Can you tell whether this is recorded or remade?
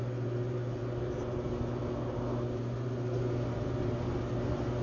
recorded